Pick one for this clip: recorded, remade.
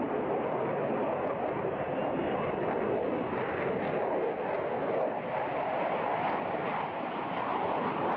recorded